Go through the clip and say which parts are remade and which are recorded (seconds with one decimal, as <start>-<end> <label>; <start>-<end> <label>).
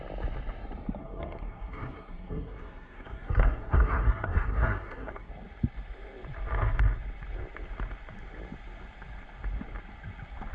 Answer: 0.0-1.0 recorded; 1.0-5.3 remade; 5.3-10.5 recorded